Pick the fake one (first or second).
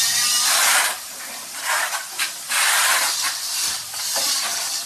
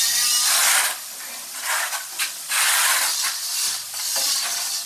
first